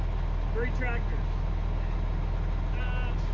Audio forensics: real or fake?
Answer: real